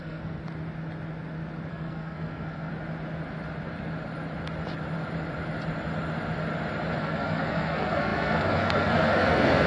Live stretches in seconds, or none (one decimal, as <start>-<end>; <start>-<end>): 0.4-1.7; 2.7-7.0